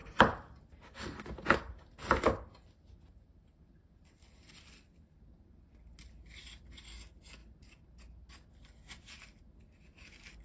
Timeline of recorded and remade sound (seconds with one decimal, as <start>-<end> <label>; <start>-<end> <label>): 0.0-10.4 recorded